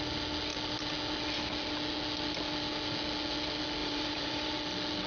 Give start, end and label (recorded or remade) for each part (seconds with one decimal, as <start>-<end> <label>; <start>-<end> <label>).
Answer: 0.0-3.8 recorded; 3.8-4.5 remade; 4.5-5.1 recorded